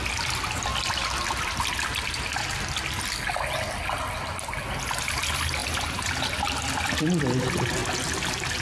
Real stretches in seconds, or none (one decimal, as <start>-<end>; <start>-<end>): 0.0-8.6